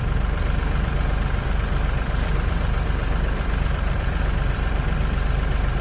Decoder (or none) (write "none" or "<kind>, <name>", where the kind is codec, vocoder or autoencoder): vocoder, BigVGAN v2